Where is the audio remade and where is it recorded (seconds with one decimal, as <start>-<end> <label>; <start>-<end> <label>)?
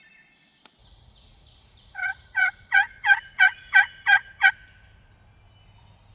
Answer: 0.0-0.8 recorded; 0.8-4.5 remade; 4.5-6.1 recorded